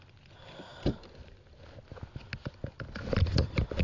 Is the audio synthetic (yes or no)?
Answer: no